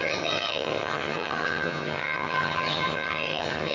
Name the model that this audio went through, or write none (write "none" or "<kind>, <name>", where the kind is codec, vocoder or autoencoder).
vocoder, HiFi-GAN